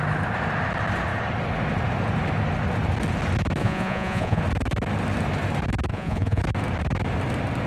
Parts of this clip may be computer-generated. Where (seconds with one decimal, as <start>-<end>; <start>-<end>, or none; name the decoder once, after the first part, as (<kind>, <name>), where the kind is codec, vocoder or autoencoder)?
3.6-4.4 (vocoder, Vocos); 5.9-6.4